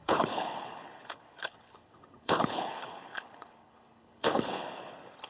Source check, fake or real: fake